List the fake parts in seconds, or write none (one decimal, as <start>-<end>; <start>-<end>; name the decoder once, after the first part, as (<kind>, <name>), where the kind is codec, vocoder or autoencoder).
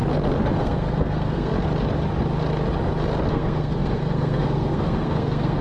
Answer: 0.5-1.5 (codec, SNAC); 3.3-5.6